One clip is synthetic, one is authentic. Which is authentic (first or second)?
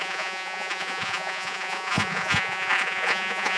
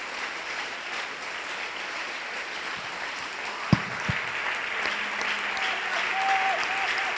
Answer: second